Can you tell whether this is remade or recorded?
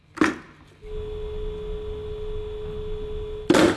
recorded